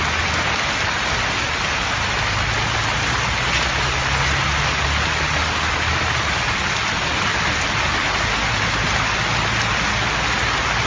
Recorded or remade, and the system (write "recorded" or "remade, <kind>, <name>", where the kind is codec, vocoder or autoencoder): recorded